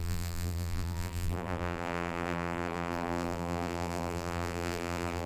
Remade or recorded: remade